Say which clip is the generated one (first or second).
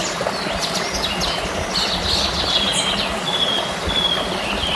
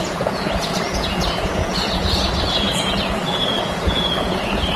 second